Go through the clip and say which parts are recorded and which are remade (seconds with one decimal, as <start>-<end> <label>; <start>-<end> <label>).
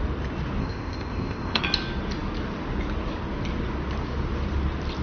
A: 0.0-0.6 recorded; 0.6-1.6 remade; 1.6-5.0 recorded